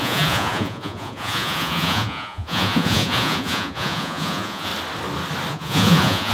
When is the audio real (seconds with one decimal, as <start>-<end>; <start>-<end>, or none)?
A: 4.7-5.5